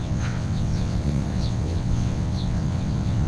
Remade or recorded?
remade